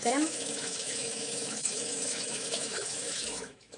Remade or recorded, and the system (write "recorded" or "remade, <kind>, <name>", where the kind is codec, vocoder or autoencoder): remade, autoencoder, DAC-VAE